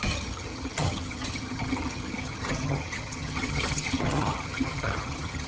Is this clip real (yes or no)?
no